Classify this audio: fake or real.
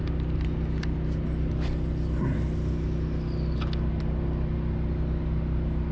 real